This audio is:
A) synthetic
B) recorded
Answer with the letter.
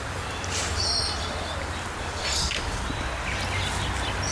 B